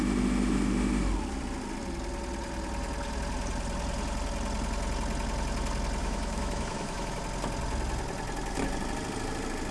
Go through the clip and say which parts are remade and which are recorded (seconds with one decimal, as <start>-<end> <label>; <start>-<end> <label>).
0.0-6.0 recorded; 6.0-7.2 remade; 7.2-9.7 recorded